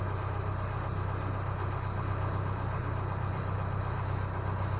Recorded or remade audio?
recorded